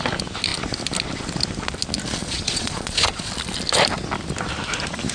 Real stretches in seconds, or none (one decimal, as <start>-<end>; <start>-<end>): 0.0-2.2; 3.3-5.1

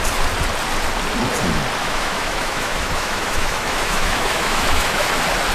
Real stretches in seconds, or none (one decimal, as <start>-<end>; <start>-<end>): 0.0-1.8; 5.1-5.5

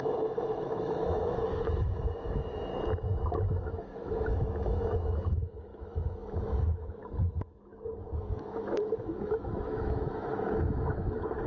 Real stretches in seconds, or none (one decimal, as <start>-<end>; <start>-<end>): 2.7-3.6; 7.0-8.1

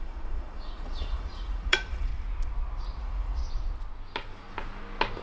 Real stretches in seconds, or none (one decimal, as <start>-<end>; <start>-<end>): 2.1-3.0; 3.4-5.2

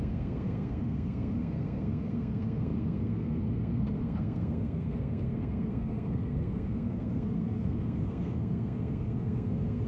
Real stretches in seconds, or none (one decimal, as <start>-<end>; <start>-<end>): none

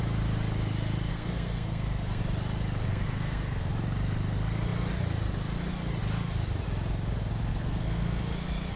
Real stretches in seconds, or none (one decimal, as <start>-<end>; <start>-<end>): 0.0-1.1; 2.2-2.8; 3.7-7.5; 8.2-8.8